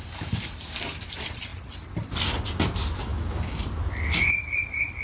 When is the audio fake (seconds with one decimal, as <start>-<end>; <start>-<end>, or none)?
none